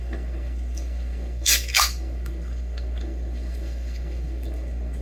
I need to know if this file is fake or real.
fake